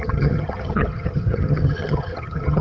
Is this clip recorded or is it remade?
remade